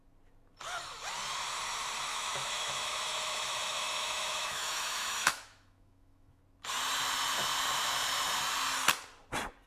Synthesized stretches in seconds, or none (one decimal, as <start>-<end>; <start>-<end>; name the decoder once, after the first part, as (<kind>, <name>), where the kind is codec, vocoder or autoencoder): 2.1-6.4 (autoencoder, DAC-VAE)